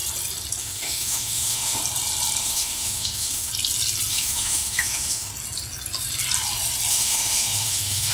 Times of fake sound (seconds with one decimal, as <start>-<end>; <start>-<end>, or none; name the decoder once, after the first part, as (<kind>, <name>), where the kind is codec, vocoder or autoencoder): 0.6-1.8 (autoencoder, DAC-VAE); 2.4-3.5; 4.1-5.3; 6.9-8.1